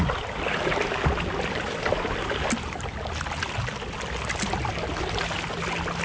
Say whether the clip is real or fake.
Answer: real